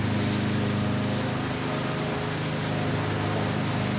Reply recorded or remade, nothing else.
recorded